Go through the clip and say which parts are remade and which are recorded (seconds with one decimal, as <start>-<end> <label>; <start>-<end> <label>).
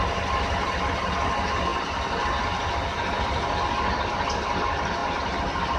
0.0-5.8 recorded